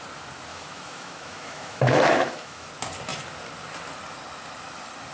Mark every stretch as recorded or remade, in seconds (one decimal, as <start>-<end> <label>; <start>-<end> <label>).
0.0-0.5 recorded; 0.5-2.7 remade; 2.7-5.1 recorded